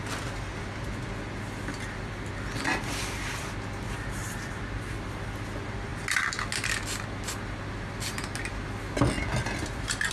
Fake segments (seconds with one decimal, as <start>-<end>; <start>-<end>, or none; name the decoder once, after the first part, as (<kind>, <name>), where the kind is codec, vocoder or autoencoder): none